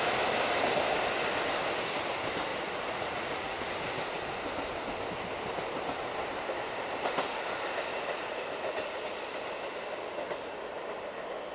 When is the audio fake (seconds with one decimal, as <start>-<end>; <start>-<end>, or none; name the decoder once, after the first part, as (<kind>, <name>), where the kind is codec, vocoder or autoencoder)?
2.5-3.7 (vocoder, Vocos); 7.9-9.0